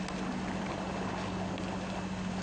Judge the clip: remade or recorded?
recorded